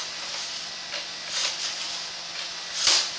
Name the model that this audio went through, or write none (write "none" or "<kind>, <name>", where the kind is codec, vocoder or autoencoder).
none